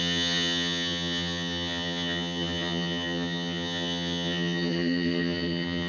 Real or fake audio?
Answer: fake